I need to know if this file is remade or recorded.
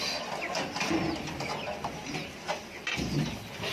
recorded